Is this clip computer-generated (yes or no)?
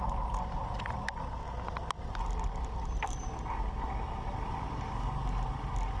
no